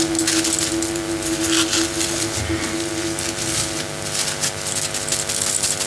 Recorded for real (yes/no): yes